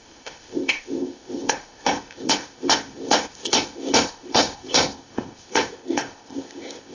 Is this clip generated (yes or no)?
yes